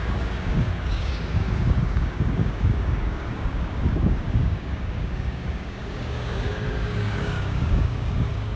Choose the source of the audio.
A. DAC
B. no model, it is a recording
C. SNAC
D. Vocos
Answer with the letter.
A